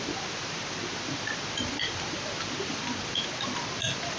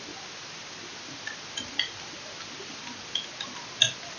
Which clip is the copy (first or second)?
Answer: first